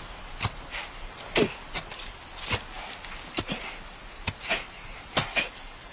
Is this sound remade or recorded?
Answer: recorded